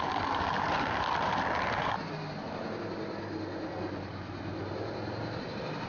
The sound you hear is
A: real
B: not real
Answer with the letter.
B